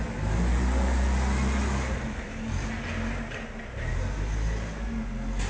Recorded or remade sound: recorded